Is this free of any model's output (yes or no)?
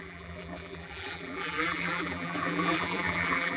no